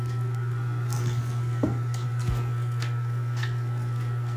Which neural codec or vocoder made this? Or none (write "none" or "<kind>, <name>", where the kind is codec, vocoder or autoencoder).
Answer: codec, SNAC